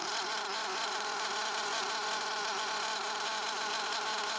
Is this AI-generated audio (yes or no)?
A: yes